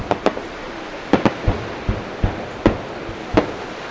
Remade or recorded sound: recorded